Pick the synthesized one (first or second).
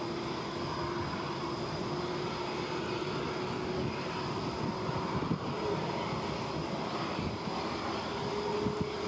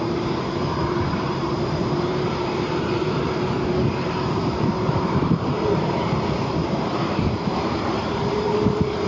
second